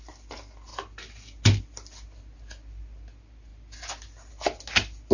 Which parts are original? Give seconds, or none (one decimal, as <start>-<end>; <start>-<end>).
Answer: 0.0-5.1